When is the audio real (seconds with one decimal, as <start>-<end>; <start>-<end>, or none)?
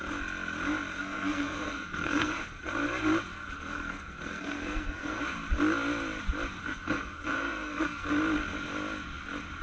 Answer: 0.0-0.9; 2.7-3.3; 5.2-6.6; 8.1-9.6